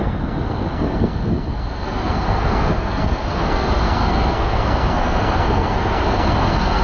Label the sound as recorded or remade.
remade